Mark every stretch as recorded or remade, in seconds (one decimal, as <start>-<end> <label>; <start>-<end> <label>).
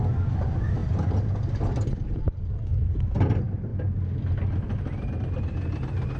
0.0-6.2 recorded